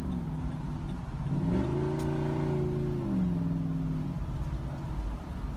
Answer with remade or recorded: recorded